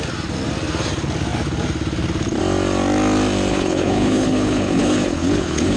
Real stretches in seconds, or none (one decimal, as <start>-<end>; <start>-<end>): 0.0-3.5